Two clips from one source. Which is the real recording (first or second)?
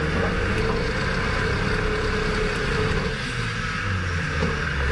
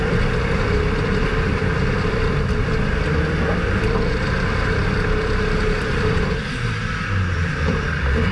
first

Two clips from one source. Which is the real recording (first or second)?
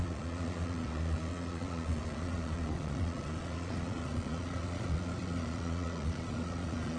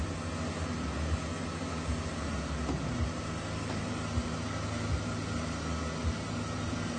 second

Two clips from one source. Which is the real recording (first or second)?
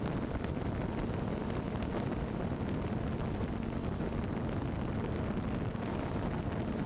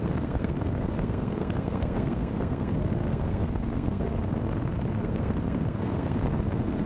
first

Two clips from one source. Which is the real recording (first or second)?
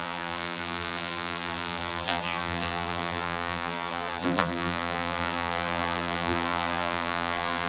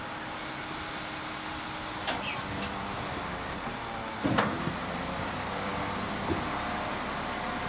second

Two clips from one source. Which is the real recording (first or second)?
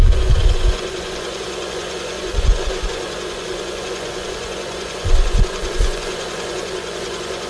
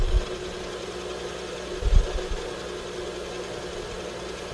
second